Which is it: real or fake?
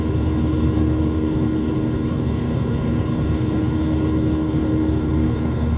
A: fake